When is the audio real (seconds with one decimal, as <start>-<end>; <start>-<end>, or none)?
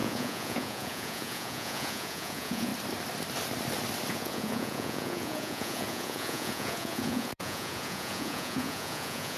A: 2.7-4.1